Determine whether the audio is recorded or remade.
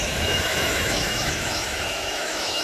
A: remade